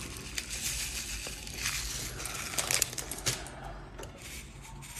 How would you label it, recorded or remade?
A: recorded